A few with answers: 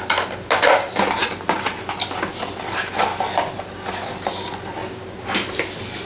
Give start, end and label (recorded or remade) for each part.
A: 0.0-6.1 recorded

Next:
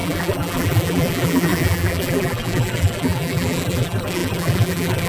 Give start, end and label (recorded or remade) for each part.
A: 0.0-5.1 remade

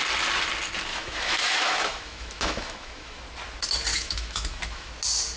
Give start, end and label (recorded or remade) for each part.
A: 0.0-0.9 recorded; 0.9-3.2 remade; 3.2-3.9 recorded; 3.9-4.9 remade; 4.9-5.4 recorded